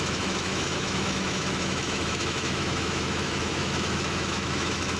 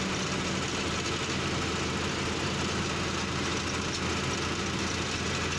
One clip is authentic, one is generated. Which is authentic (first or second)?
second